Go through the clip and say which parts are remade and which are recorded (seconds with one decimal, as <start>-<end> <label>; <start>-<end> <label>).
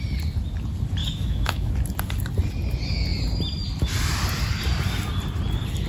0.0-1.0 recorded; 1.0-1.7 remade; 1.7-5.9 recorded